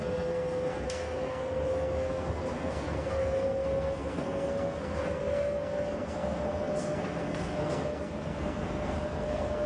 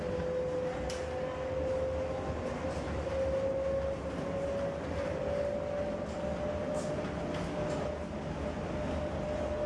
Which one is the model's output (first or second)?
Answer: first